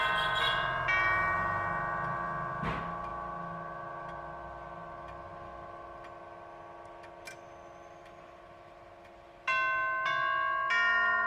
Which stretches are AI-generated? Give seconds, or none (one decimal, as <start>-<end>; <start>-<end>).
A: none